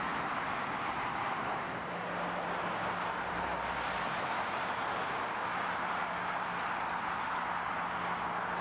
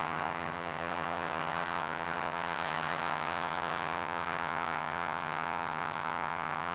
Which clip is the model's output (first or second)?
second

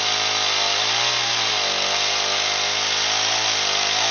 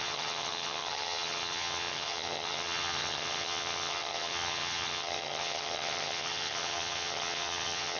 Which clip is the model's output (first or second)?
second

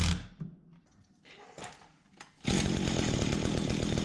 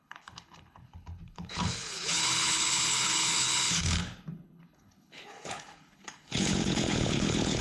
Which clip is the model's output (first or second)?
second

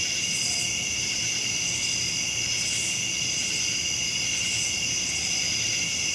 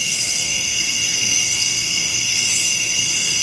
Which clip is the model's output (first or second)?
second